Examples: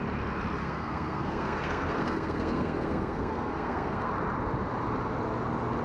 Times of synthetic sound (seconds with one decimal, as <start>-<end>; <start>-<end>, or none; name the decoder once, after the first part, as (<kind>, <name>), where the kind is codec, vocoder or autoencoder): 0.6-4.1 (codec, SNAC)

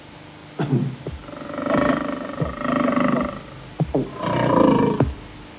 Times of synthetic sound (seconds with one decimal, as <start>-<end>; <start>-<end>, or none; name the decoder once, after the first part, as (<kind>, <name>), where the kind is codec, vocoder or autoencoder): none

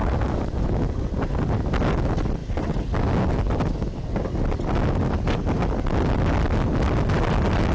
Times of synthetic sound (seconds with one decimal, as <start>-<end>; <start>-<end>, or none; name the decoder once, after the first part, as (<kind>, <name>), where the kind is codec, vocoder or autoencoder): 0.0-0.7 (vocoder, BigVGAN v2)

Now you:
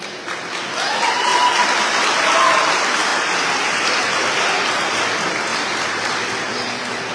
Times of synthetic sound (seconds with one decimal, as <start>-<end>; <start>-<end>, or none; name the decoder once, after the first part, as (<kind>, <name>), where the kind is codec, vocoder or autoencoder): 5.5-6.1 (vocoder, BigVGAN v2)

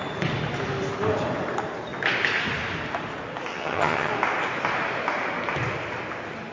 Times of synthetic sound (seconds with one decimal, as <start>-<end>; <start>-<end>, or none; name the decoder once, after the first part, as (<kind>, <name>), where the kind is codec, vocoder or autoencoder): 3.5-4.1 (vocoder, HiFi-GAN)

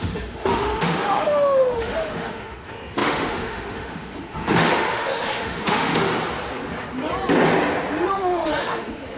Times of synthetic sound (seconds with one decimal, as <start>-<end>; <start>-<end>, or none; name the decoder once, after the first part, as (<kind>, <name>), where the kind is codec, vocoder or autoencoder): 0.0-6.1 (autoencoder, DAC-VAE); 8.1-9.2

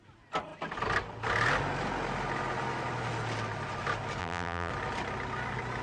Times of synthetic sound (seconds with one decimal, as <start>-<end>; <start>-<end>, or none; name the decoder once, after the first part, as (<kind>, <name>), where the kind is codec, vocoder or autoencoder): 4.2-4.7 (vocoder, BigVGAN v2)